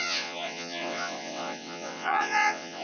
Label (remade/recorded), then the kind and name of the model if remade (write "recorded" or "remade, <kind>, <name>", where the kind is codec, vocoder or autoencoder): remade, vocoder, WaveNeXt